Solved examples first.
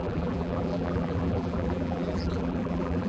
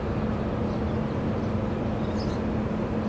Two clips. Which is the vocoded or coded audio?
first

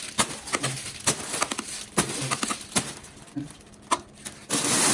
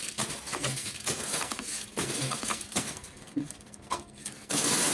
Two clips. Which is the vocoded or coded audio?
second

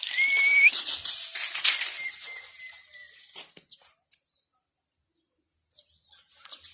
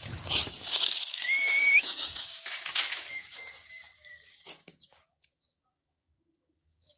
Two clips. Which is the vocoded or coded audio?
second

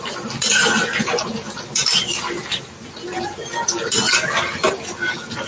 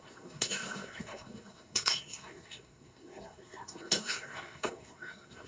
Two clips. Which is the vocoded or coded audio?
second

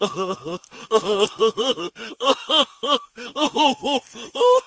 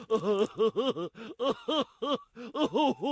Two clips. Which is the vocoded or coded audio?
first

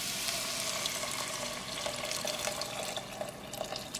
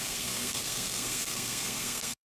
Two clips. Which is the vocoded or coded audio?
second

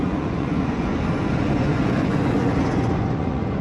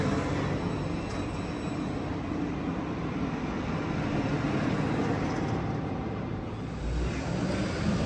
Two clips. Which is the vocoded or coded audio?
first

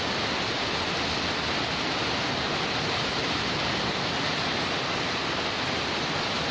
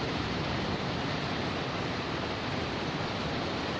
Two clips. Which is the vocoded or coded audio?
second